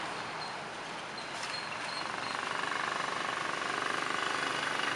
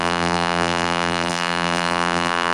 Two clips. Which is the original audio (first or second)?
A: first